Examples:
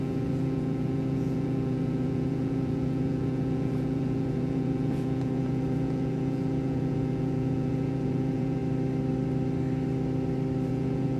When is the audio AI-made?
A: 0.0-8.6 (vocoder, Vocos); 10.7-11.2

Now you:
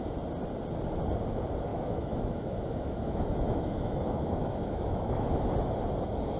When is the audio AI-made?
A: 1.7-5.5 (autoencoder, DAC-VAE)

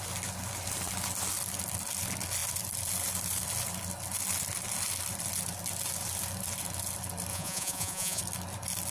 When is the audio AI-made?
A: 7.3-8.2 (vocoder, Vocos)

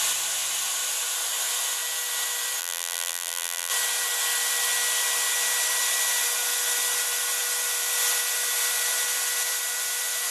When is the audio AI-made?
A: 2.6-3.7 (vocoder, BigVGAN v2)

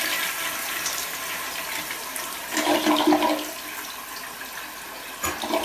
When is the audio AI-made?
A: 0.6-3.0 (vocoder, BigVGAN v2)

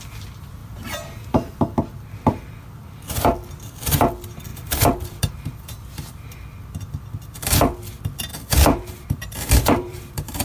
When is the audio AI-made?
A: 0.6-1.6 (vocoder, BigVGAN v2); 4.5-5.4; 8.3-10.4